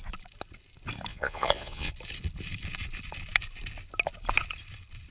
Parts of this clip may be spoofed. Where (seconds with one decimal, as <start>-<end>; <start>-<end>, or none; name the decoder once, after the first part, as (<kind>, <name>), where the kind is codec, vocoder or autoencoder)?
1.1-1.9 (vocoder, Vocos)